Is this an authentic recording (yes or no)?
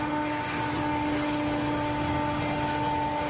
yes